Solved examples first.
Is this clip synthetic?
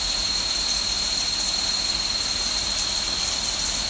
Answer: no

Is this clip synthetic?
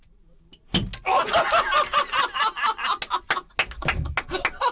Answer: no